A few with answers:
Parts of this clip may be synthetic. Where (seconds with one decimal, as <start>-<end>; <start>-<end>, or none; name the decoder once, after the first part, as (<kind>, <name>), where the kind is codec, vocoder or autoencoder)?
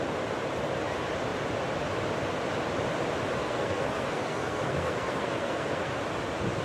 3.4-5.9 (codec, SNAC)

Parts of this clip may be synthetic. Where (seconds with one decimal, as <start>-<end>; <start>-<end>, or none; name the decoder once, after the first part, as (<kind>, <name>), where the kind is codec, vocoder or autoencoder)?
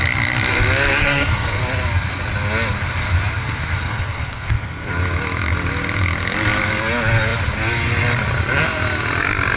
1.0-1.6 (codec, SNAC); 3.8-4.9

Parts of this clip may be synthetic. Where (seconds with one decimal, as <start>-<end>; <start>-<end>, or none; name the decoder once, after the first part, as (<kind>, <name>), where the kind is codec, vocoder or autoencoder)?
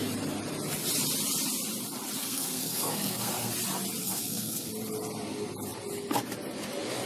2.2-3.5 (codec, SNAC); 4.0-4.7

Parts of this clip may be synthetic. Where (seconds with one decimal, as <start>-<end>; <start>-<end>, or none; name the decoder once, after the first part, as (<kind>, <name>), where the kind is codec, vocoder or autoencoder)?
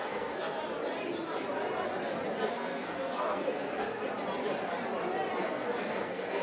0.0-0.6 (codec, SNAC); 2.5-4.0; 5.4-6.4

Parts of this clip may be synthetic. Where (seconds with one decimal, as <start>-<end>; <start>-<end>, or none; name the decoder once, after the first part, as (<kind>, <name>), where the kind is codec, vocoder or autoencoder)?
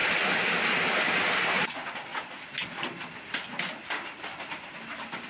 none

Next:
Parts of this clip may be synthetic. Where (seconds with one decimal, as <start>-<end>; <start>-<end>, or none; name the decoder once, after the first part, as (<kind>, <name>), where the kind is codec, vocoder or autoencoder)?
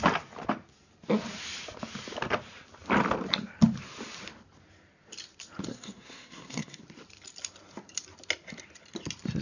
5.7-6.8 (codec, SNAC)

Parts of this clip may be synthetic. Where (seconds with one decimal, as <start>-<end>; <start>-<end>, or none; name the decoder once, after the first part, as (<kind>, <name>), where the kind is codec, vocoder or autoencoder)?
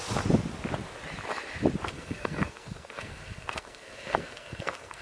1.9-5.0 (codec, SNAC)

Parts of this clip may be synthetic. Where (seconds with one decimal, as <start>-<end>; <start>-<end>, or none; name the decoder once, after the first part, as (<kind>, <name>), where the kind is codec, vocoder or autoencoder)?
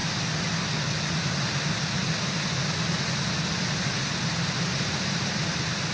none